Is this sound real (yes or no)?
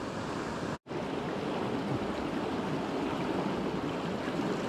yes